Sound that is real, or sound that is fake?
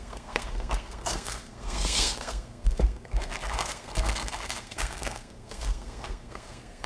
fake